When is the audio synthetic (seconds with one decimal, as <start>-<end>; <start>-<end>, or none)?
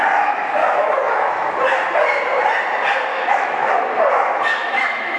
0.6-1.3; 3.1-3.7; 4.6-5.2